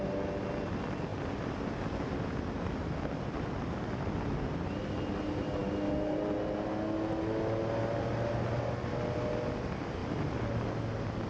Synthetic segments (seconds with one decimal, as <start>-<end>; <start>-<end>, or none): none